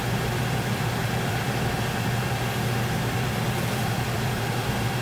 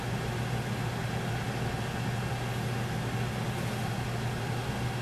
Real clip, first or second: second